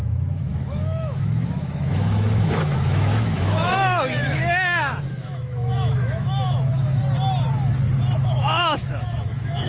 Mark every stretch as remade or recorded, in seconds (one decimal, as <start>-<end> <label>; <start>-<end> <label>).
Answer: 0.0-7.0 remade; 7.0-8.2 recorded; 8.2-9.7 remade